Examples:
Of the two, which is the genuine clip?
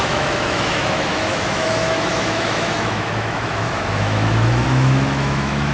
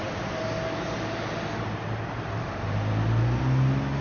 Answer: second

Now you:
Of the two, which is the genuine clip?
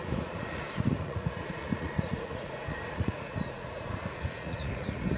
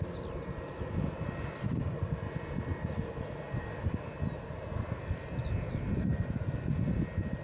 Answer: second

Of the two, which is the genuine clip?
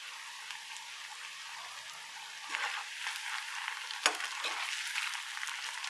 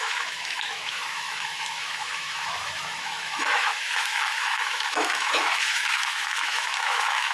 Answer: first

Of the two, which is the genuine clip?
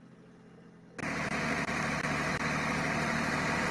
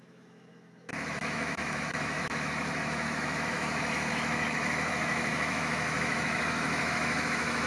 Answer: first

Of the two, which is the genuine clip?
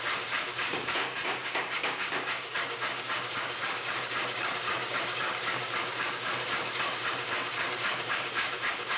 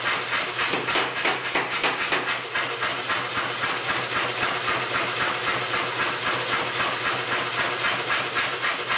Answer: second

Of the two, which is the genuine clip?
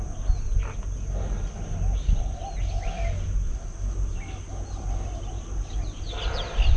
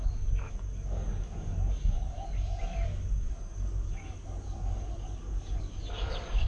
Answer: first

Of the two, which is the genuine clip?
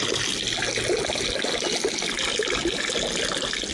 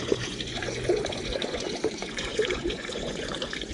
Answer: first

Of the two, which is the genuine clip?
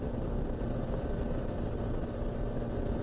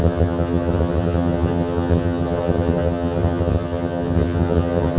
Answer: first